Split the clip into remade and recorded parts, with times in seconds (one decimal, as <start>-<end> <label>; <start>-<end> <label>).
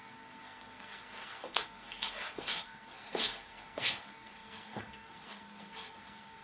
0.0-6.4 remade